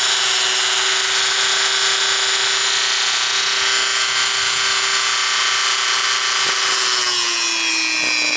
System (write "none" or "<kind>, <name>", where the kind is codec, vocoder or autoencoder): none